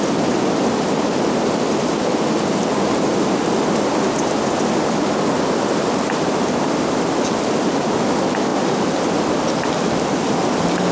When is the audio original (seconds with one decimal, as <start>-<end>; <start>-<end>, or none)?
0.0-10.9